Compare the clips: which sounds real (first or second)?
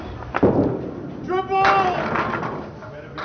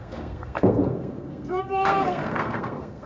first